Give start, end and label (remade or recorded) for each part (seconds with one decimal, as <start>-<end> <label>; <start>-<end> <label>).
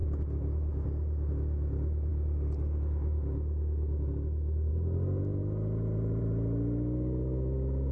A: 0.0-7.9 recorded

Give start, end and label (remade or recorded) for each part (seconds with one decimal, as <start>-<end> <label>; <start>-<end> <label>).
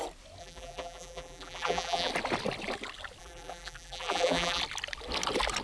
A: 0.0-0.4 recorded; 0.4-2.1 remade; 2.1-3.2 recorded; 3.2-4.6 remade; 4.6-5.6 recorded